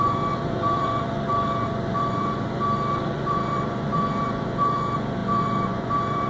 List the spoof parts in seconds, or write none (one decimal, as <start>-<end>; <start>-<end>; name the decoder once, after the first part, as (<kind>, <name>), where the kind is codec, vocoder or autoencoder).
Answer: 0.0-6.3 (vocoder, Vocos)